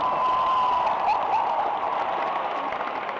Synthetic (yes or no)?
no